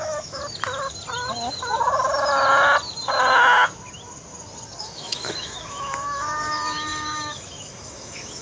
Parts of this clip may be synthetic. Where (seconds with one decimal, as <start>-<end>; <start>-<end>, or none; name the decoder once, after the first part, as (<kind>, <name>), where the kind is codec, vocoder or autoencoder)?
0.0-0.4 (autoencoder, DAC-VAE); 4.8-8.4